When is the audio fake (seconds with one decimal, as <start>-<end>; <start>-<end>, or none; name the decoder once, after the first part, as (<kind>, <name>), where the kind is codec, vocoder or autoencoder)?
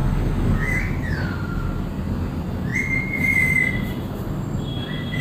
0.0-0.8 (codec, DAC)